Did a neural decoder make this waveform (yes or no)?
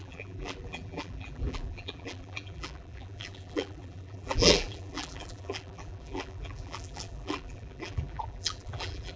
yes